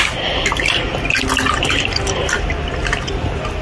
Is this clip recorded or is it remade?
recorded